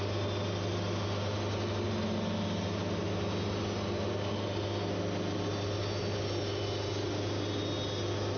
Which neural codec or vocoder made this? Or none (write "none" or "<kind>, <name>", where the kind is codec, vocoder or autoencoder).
none